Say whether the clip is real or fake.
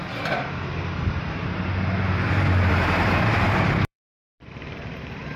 fake